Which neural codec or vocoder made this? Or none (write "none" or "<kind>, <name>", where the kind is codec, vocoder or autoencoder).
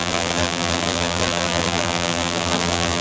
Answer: vocoder, BigVGAN v2